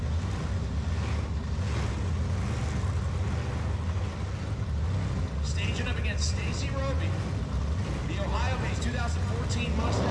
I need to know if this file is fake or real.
real